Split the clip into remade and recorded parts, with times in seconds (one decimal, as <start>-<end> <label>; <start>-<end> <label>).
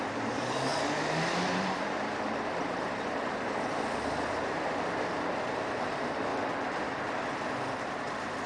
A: 0.0-6.3 remade; 6.3-8.5 recorded